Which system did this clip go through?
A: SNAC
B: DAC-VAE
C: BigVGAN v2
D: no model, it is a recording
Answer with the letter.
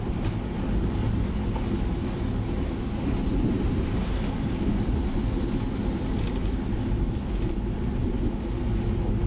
D